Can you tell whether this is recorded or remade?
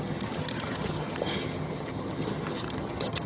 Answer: remade